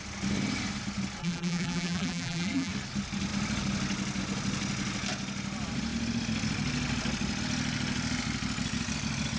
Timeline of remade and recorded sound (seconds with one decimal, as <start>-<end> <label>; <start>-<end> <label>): 0.0-1.2 recorded; 1.2-2.7 remade; 2.7-9.4 recorded

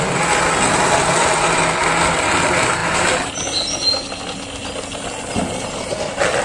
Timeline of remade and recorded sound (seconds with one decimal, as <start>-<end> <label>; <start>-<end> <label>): 0.0-6.4 recorded

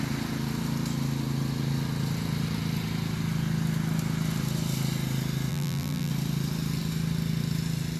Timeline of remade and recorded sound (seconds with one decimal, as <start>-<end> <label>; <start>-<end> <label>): 0.0-5.5 recorded; 5.5-6.1 remade; 6.1-8.0 recorded

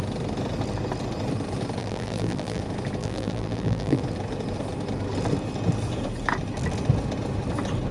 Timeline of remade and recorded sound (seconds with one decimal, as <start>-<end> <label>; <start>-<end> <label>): 0.0-1.8 recorded; 1.8-2.6 remade; 2.6-3.0 recorded; 3.0-4.0 remade; 4.0-7.9 recorded

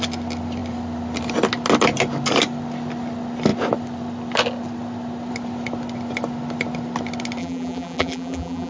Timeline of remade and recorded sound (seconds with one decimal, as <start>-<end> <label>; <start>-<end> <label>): 0.0-7.4 recorded; 7.4-8.7 remade

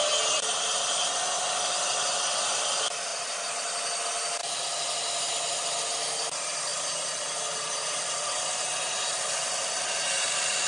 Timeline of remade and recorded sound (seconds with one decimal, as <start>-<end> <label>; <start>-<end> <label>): 0.0-10.7 recorded